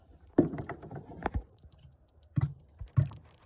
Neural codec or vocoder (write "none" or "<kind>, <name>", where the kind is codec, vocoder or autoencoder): vocoder, BigVGAN v2